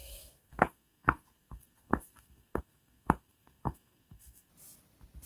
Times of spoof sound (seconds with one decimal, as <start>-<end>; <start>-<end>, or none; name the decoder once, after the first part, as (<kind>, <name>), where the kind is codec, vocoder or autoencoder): 0.0-4.5 (codec, SNAC)